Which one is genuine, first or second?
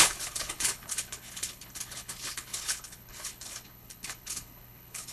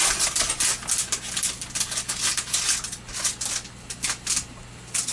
second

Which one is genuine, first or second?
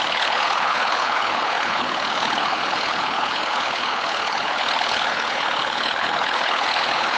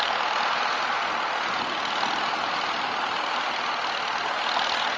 second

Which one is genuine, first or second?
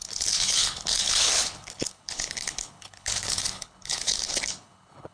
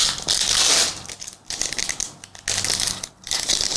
second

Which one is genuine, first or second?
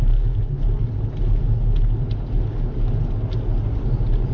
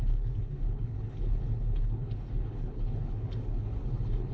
first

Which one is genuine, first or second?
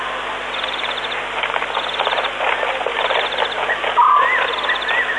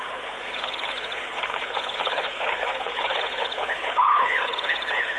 first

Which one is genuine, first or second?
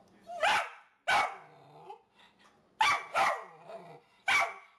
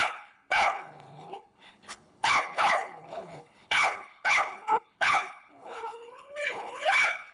first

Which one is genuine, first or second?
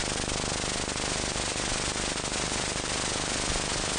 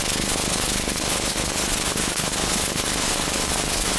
first